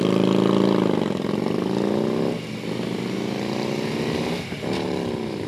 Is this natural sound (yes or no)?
yes